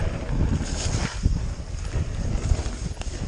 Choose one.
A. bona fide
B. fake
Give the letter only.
A